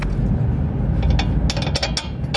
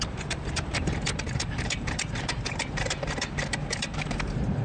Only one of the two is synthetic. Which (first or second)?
second